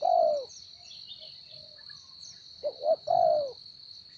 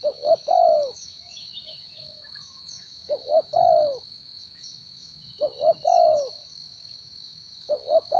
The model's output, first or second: second